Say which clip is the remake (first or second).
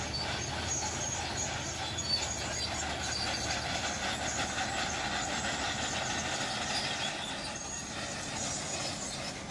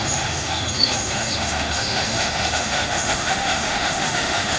second